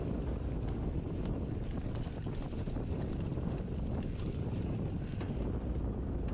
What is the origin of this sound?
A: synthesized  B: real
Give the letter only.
B